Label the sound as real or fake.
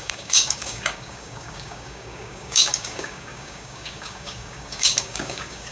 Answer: fake